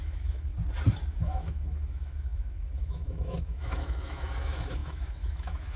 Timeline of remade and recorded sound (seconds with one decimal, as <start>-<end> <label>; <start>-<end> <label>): 0.0-0.5 remade; 0.5-1.1 recorded; 1.1-5.8 remade